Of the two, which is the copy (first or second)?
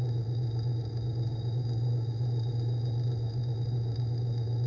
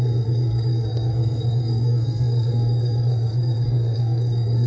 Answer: second